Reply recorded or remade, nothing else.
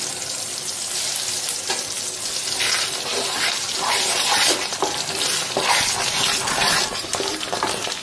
recorded